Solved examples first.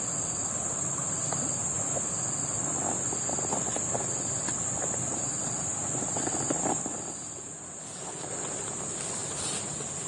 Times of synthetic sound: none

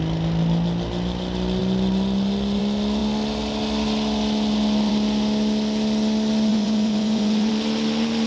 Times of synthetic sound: 6.5-7.5 (vocoder, Vocos)

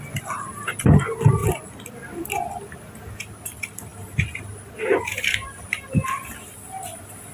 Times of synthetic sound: none

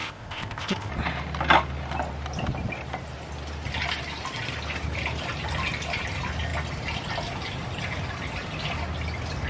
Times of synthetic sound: 0.0-0.9 (codec, ZipCodec)

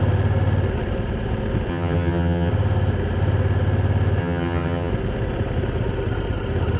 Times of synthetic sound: 1.7-2.5 (vocoder, HiFi-GAN); 4.2-4.9

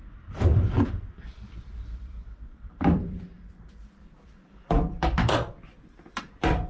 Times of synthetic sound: 0.0-6.7 (vocoder, BigVGAN v2)

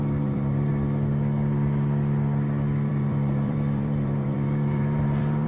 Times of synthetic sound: 0.0-0.7 (vocoder, BigVGAN v2); 2.9-5.5

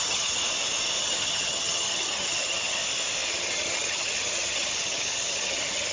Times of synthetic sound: 0.0-0.4 (vocoder, HiFi-GAN); 1.0-2.8; 3.3-5.9